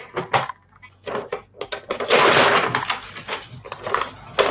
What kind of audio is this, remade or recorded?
recorded